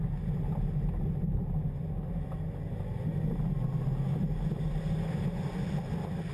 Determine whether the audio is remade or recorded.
recorded